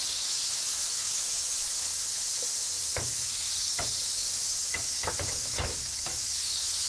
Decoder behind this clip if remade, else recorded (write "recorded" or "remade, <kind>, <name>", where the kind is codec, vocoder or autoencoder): remade, autoencoder, DAC-VAE